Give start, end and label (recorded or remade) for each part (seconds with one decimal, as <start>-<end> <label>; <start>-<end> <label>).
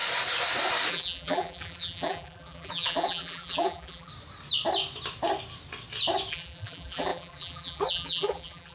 0.0-0.9 recorded; 0.9-4.1 remade; 4.1-6.3 recorded; 6.3-8.7 remade